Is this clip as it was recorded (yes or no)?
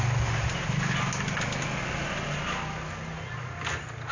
yes